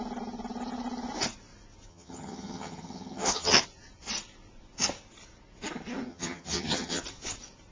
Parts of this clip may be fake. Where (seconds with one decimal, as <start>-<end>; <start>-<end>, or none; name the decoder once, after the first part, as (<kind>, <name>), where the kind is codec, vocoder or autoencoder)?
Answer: 1.9-3.6 (vocoder, HiFi-GAN); 6.1-7.0